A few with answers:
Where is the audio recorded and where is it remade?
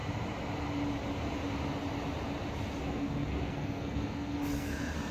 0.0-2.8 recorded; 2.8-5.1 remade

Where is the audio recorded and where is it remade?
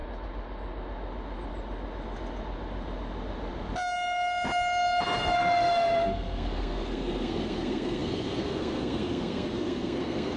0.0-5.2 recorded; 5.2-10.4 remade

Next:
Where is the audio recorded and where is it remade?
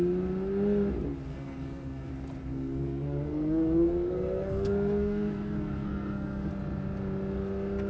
0.0-1.3 recorded; 1.3-2.1 remade; 2.1-2.5 recorded; 2.5-6.5 remade; 6.5-7.9 recorded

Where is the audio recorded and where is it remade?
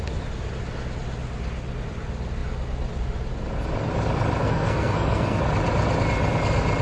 0.0-4.4 recorded; 4.4-5.4 remade; 5.4-6.8 recorded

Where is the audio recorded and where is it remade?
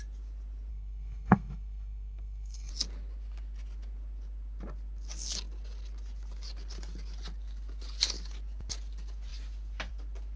0.0-0.7 recorded; 0.7-2.7 remade; 2.7-10.4 recorded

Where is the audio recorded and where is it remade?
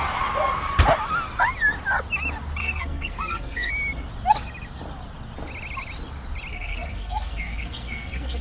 0.0-2.6 recorded; 2.6-3.7 remade; 3.7-6.5 recorded; 6.5-8.4 remade